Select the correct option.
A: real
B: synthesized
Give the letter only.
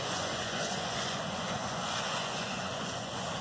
B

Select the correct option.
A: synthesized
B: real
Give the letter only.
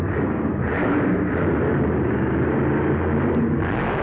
B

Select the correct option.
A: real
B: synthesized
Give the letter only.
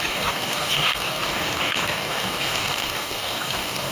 B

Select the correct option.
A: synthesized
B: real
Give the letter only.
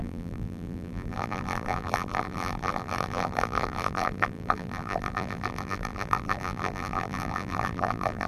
A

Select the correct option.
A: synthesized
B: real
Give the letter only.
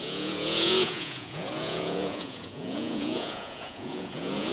A